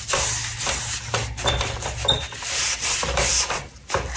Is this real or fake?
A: real